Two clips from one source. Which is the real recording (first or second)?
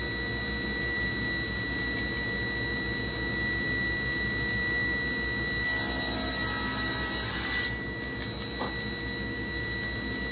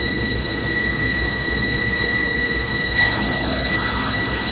first